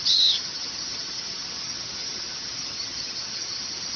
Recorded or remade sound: remade